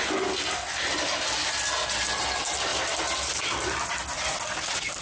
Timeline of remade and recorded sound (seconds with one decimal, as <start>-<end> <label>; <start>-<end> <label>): 0.0-5.0 recorded